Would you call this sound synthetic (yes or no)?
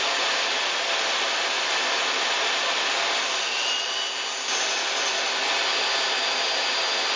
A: no